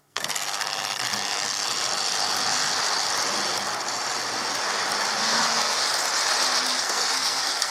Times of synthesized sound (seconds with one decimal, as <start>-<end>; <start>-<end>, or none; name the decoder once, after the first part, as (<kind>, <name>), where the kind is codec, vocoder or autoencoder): 0.0-0.6 (codec, SNAC); 5.2-5.8; 6.8-7.7